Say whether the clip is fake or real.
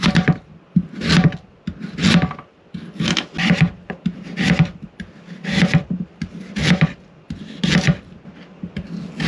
real